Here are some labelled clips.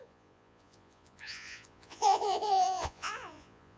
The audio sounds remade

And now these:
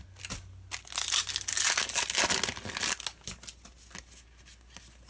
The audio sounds recorded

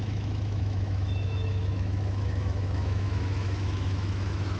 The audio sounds remade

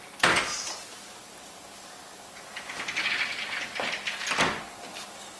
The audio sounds recorded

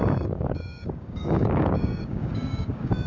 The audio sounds remade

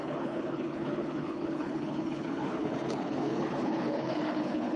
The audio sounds remade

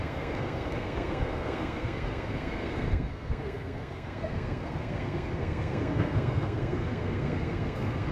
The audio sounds remade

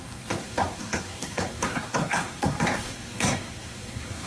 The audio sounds remade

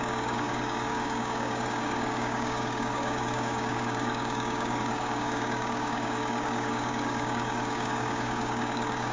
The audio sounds remade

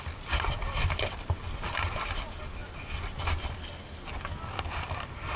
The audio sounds recorded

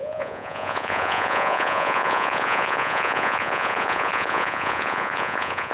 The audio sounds remade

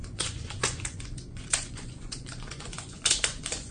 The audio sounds remade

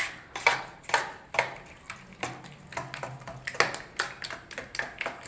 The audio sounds recorded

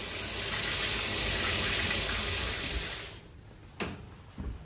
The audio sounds recorded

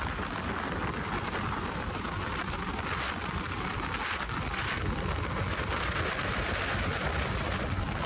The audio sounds recorded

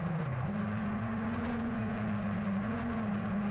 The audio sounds remade